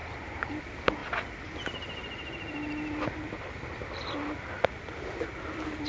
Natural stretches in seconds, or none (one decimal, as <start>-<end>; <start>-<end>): 0.0-5.9